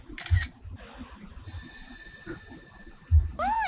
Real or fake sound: fake